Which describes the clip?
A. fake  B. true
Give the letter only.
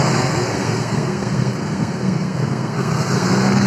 A